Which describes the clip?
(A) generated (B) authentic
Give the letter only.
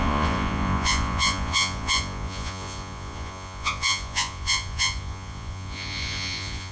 A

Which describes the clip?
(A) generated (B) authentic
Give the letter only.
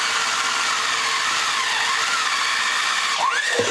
B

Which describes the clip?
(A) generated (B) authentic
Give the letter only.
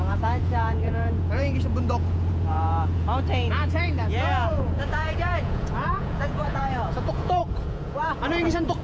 A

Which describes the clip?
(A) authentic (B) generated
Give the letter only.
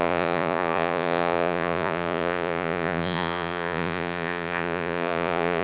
B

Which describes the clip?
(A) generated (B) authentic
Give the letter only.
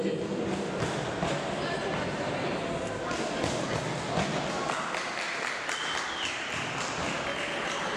B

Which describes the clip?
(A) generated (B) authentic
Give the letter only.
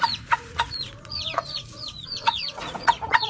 A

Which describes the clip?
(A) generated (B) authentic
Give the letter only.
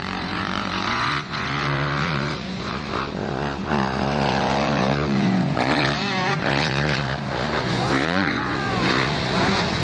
A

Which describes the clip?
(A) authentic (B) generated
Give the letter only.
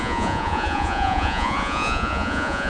B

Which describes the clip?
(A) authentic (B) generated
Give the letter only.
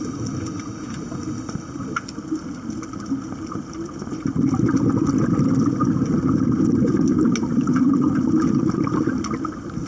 A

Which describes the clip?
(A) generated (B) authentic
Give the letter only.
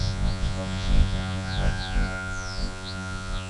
A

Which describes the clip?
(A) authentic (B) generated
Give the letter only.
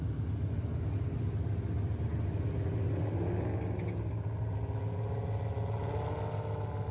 A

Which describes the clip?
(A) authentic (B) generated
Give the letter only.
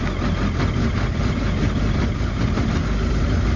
A